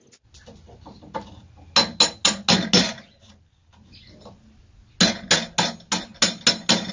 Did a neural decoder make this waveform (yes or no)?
no